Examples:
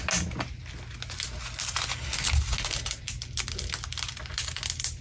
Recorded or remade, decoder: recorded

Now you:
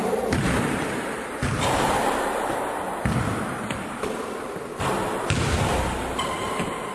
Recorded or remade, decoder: recorded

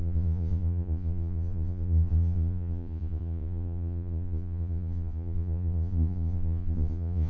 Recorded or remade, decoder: remade, vocoder, Vocos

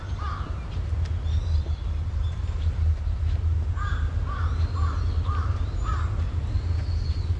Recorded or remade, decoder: recorded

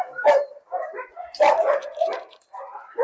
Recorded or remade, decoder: remade, vocoder, BigVGAN v2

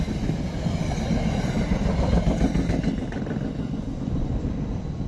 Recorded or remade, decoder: recorded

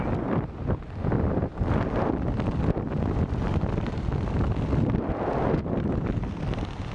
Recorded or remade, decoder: recorded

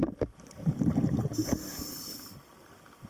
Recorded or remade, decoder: recorded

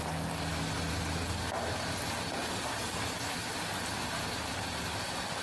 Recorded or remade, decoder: recorded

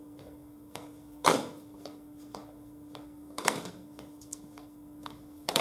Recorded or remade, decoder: remade, codec, SNAC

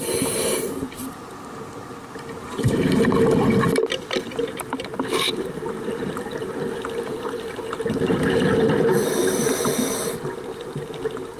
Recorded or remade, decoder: remade, vocoder, BigVGAN v2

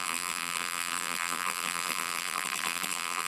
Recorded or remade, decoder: remade, vocoder, BigVGAN v2